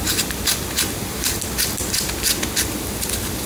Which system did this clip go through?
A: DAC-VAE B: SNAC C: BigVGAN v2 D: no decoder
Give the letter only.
D